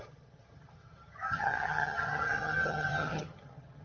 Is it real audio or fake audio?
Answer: fake